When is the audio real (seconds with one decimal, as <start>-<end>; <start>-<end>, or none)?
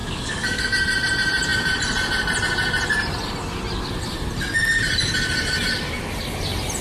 0.6-6.8